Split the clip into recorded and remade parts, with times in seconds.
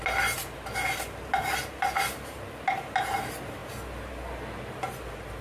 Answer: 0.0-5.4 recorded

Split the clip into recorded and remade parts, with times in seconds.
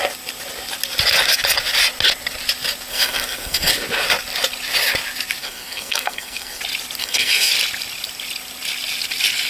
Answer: 0.0-2.9 recorded; 2.9-3.7 remade; 3.7-5.4 recorded; 5.4-6.6 remade; 6.6-7.0 recorded; 7.0-7.5 remade; 7.5-9.5 recorded